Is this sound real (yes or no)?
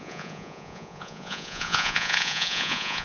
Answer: no